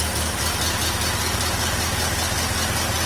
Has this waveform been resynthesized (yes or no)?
no